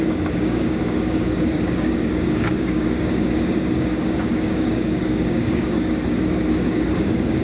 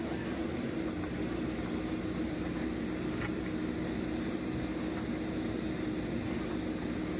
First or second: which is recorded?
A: second